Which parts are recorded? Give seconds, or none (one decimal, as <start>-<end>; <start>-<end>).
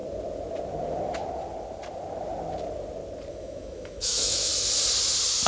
0.0-3.3; 4.5-5.5